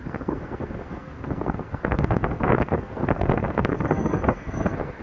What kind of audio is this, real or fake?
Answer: fake